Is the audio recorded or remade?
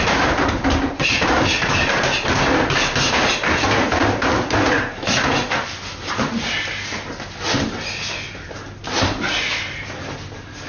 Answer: recorded